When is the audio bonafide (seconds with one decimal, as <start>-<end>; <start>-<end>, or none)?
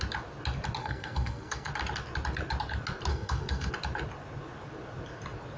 0.0-0.8; 1.7-3.1; 3.7-5.6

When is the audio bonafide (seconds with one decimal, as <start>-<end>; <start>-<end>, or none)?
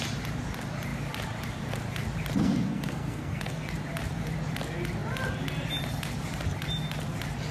0.0-2.4; 3.7-7.5